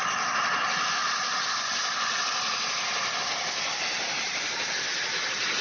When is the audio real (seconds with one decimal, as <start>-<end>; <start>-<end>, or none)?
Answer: 0.0-5.6